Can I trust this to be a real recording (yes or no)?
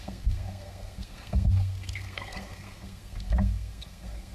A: no